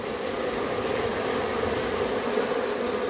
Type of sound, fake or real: real